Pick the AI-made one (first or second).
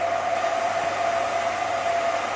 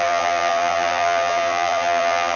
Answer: second